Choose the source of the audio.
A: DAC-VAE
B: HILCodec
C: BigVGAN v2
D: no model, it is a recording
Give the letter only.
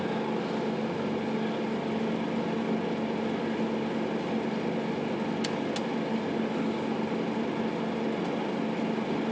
D